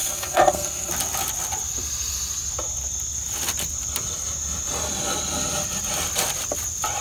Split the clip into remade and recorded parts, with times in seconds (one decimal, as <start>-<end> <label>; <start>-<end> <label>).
0.0-0.9 remade; 0.9-7.0 recorded